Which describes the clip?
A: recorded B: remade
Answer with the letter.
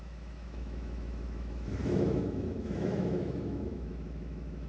B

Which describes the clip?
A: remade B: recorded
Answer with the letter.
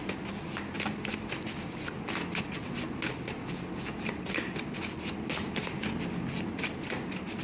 B